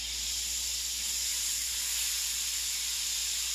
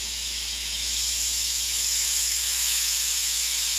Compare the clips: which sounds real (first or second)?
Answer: first